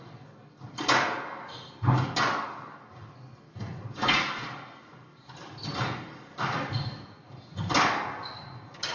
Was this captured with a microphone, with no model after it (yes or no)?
yes